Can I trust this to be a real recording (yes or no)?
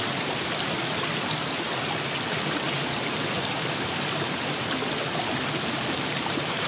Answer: yes